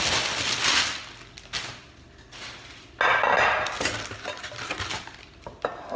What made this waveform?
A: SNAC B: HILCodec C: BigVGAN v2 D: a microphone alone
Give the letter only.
D